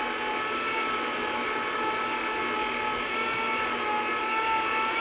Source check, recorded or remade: recorded